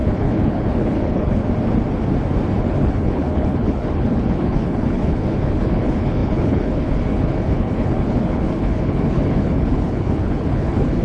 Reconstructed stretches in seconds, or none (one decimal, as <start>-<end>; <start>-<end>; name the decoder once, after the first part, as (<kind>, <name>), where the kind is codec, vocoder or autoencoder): 0.0-1.4 (codec, HILCodec); 2.6-11.0